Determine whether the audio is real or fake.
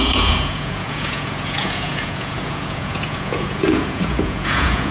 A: fake